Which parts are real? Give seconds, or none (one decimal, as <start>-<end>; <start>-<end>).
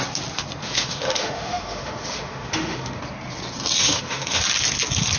0.0-0.6; 3.0-3.8; 4.4-5.2